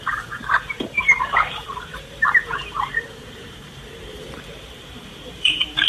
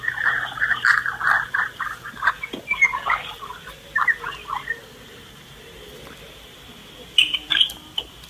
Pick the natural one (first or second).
second